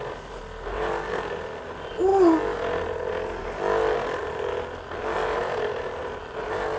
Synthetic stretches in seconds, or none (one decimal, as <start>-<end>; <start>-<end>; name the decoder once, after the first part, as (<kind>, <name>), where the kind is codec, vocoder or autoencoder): 5.2-6.2 (vocoder, BigVGAN v2)